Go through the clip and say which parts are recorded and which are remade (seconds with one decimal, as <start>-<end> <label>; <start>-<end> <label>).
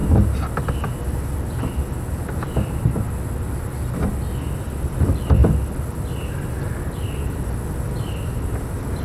0.0-9.0 recorded